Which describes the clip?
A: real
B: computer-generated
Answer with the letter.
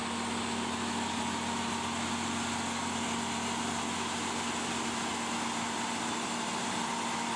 A